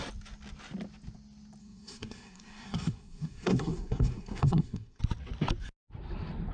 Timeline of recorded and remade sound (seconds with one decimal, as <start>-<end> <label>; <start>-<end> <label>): 0.0-1.6 recorded; 1.6-5.0 remade; 5.0-6.5 recorded